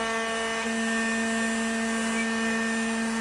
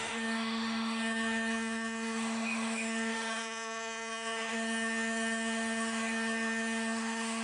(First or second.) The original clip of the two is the first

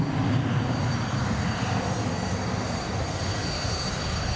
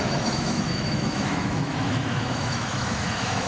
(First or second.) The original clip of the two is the first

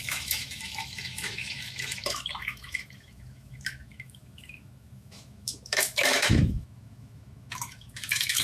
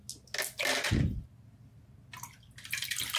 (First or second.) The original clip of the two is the second